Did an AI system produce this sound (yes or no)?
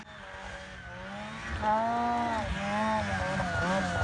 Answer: no